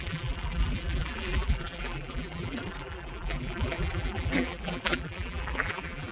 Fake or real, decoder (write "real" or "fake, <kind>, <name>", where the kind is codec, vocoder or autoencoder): fake, vocoder, BigVGAN v2